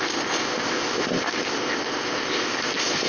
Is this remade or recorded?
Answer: remade